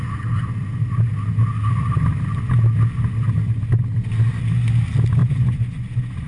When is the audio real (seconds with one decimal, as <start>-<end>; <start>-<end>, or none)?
0.0-5.2